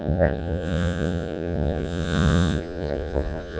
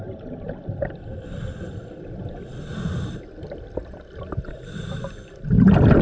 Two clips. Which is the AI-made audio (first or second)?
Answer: first